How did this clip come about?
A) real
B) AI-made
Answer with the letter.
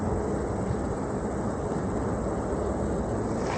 A